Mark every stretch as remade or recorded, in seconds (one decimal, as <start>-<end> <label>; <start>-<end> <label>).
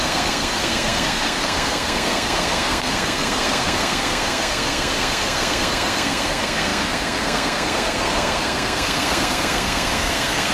0.0-10.5 remade